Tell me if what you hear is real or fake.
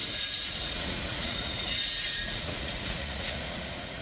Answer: fake